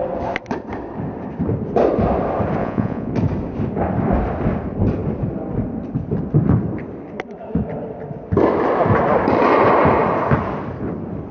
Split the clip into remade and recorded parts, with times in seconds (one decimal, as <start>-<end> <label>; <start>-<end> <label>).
0.0-2.6 recorded; 2.6-3.1 remade; 3.1-11.3 recorded